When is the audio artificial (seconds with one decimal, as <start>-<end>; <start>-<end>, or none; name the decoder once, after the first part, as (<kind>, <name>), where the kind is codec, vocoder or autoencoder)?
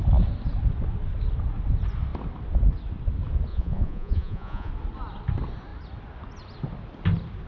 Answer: 3.5-4.7 (vocoder, Vocos)